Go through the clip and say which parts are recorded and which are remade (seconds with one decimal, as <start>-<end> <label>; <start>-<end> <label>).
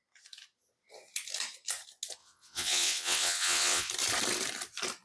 0.0-2.2 recorded; 2.2-3.9 remade; 3.9-5.0 recorded